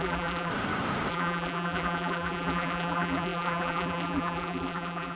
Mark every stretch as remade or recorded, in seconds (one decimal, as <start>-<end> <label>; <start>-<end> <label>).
0.0-0.5 remade; 0.5-1.1 recorded; 1.1-5.2 remade